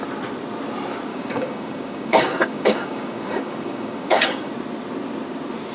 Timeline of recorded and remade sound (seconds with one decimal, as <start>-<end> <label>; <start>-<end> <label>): 0.0-1.1 recorded; 1.1-4.5 remade; 4.5-5.7 recorded